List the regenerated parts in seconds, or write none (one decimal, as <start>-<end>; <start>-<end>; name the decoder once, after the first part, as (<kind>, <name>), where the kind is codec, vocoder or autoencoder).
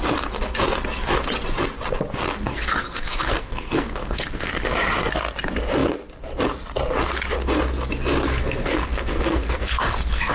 2.5-4.5 (codec, SNAC); 8.2-10.3